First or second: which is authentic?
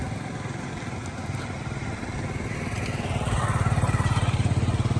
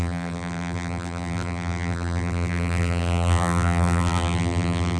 first